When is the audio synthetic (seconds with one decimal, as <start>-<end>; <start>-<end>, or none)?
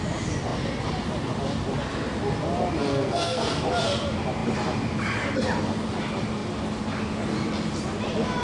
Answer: 2.9-3.5